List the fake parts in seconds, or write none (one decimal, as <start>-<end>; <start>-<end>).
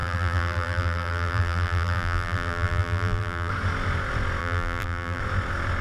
0.0-3.5; 4.4-5.2